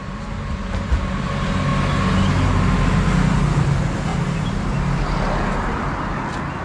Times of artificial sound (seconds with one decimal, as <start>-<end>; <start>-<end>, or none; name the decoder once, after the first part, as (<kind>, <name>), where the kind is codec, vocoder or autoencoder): 4.1-5.0 (vocoder, BigVGAN v2)